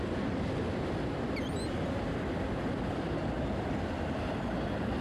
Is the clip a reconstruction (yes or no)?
no